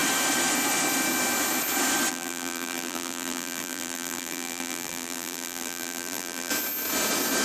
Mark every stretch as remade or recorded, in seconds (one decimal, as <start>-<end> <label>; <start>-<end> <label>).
0.0-2.1 recorded; 2.1-6.5 remade; 6.5-7.4 recorded